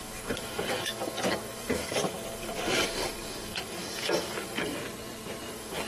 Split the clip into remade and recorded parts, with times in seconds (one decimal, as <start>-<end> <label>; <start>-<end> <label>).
0.0-4.8 remade; 4.8-5.5 recorded; 5.5-5.9 remade